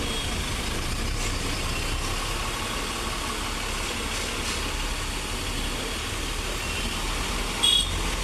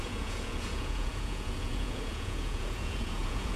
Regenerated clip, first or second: second